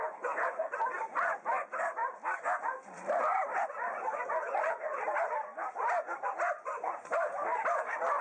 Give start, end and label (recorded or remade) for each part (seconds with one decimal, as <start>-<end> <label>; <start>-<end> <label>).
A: 0.0-2.0 recorded; 2.0-3.2 remade; 3.2-8.2 recorded